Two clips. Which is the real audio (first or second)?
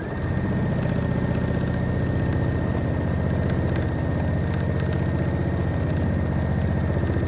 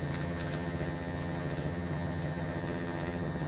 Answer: first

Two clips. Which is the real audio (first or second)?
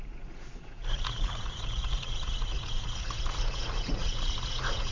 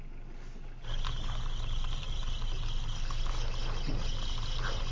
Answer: second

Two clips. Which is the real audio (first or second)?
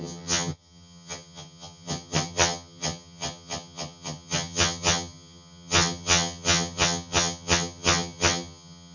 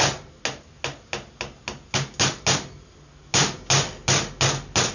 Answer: second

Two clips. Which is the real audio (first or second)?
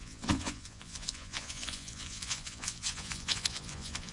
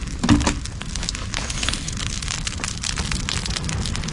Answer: second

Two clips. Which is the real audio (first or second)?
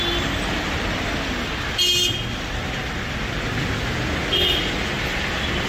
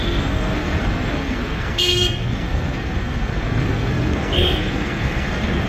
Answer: first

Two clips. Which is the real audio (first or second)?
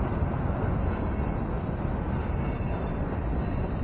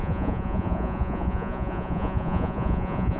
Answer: first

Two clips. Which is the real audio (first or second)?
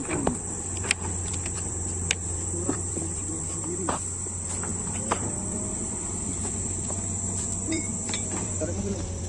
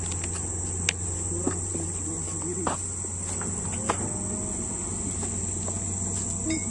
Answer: second